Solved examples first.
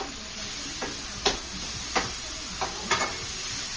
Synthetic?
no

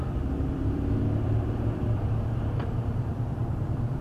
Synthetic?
yes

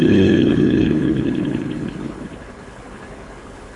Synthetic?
yes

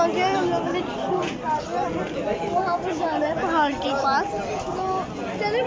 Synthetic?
no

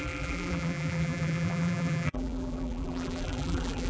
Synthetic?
yes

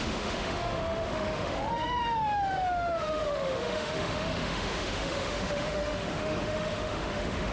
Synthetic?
yes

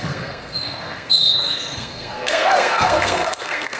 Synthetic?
yes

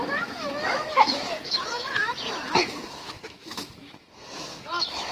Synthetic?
yes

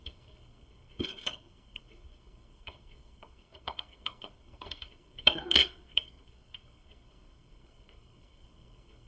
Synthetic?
yes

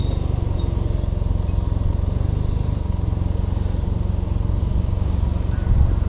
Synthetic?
no